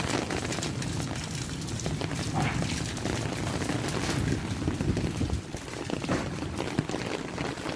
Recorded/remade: recorded